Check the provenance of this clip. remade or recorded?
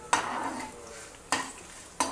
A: recorded